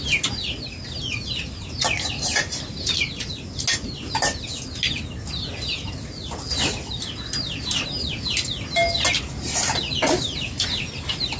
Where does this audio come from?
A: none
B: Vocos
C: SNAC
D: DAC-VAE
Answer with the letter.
A